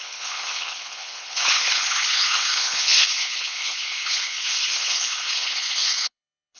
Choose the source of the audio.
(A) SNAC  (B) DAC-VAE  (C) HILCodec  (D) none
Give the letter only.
C